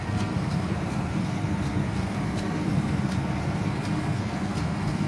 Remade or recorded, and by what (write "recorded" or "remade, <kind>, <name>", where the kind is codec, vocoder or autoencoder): remade, codec, SNAC